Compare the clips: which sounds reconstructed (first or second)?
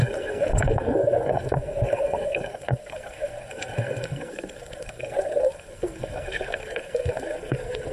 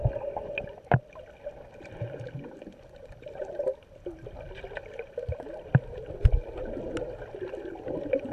first